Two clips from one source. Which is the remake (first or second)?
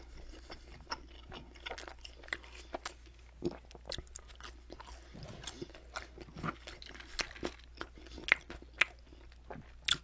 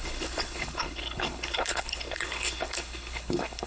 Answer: second